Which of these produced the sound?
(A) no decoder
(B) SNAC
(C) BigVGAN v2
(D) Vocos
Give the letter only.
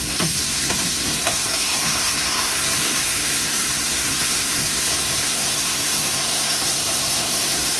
B